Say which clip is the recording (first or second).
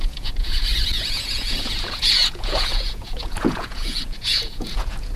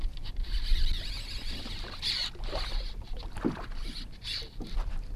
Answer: second